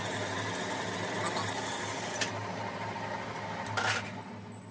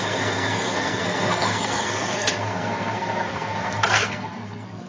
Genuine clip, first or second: first